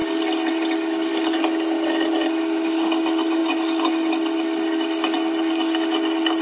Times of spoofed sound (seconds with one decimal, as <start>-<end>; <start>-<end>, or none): none